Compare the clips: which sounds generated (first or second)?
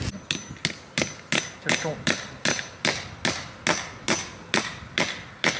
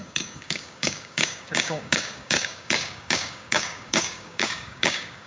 second